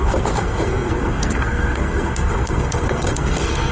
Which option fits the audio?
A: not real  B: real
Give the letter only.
A